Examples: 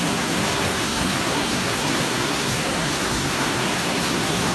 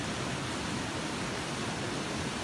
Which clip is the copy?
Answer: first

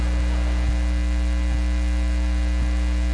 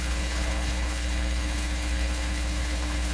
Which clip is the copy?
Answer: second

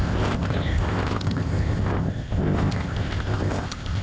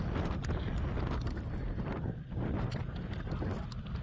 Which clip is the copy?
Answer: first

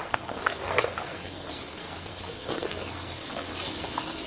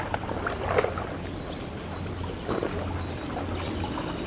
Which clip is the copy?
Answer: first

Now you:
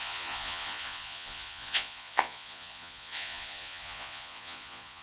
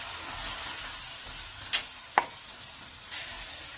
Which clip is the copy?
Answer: first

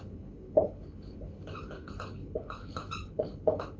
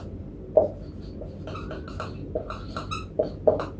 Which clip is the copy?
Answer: first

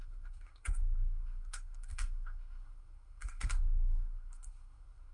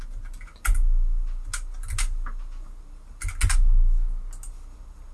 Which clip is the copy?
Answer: first